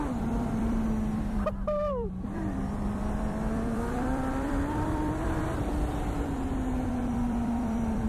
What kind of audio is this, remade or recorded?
remade